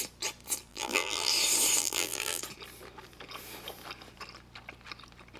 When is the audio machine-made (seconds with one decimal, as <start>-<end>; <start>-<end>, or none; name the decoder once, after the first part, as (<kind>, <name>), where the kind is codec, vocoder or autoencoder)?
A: 0.7-1.3 (vocoder, BigVGAN v2); 1.8-2.4